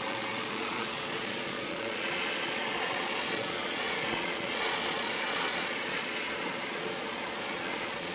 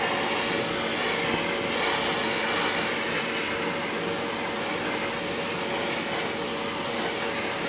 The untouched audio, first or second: second